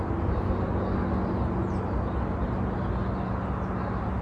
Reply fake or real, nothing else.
real